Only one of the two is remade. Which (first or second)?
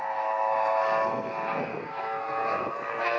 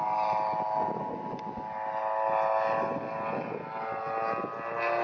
first